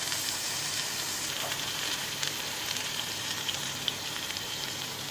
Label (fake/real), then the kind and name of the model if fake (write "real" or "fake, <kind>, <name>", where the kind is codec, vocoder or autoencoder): fake, vocoder, BigVGAN v2